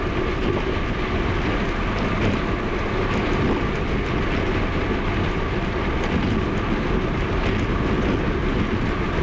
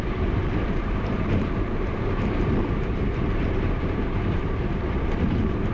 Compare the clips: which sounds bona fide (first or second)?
first